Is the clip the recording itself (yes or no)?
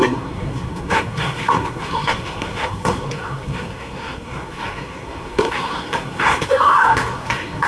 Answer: no